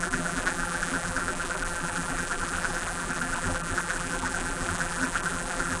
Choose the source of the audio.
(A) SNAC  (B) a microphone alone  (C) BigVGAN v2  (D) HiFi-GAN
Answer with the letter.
C